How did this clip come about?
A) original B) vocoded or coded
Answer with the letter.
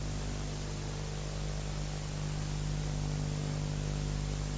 A